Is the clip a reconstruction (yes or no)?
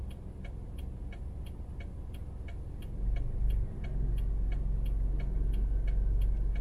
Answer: no